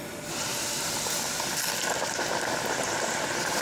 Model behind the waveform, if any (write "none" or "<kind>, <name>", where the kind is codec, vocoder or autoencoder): vocoder, BigVGAN v2